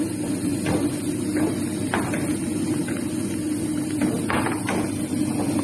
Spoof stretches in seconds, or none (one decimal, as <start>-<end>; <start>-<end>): none